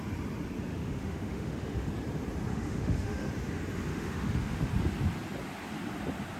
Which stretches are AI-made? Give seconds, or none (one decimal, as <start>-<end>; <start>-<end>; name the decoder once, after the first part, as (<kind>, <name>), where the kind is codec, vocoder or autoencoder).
0.7-1.9 (autoencoder, DAC-VAE); 2.5-3.3; 3.9-4.7